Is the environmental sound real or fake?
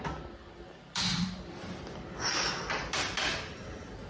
real